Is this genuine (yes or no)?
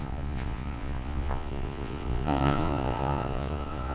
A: no